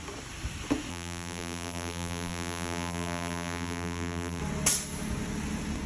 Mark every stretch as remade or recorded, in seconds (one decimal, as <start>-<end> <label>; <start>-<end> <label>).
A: 0.0-0.9 recorded; 0.9-4.4 remade; 4.4-5.9 recorded

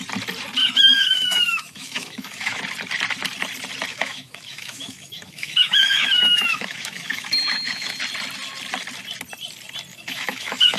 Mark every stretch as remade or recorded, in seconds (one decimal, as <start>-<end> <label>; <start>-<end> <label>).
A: 0.0-0.6 recorded; 0.6-2.6 remade; 2.6-3.9 recorded; 3.9-8.0 remade; 8.0-9.9 recorded; 9.9-10.8 remade

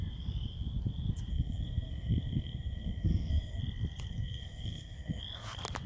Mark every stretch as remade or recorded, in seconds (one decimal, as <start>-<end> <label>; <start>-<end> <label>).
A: 0.0-1.3 recorded; 1.3-3.6 remade; 3.6-4.1 recorded; 4.1-5.2 remade; 5.2-5.9 recorded

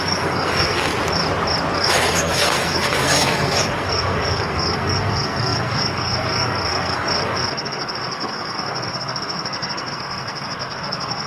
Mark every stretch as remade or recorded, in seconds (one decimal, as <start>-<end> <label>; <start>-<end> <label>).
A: 0.0-0.9 remade; 0.9-1.7 recorded; 1.7-11.3 remade

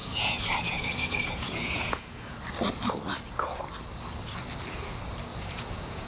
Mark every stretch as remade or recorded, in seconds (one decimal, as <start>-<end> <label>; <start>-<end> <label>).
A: 0.0-2.4 remade; 2.4-5.3 recorded; 5.3-6.1 remade